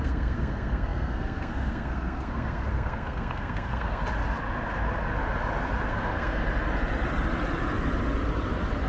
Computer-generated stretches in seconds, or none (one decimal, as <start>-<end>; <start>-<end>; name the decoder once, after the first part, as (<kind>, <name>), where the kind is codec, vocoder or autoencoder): 0.0-4.0 (codec, SNAC); 5.9-6.4

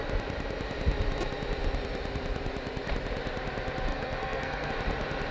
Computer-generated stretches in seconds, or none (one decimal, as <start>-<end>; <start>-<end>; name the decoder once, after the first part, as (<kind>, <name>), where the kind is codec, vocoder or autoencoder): 3.9-4.7 (codec, SNAC)